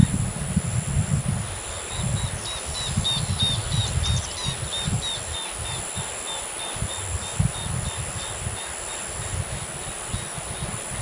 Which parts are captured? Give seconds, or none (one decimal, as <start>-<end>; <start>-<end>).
0.0-11.0